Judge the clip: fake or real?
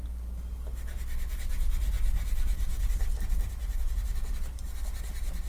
real